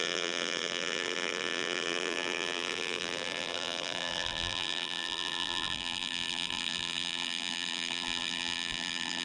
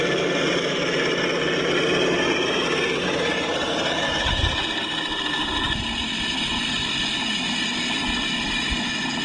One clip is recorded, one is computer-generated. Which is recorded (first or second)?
second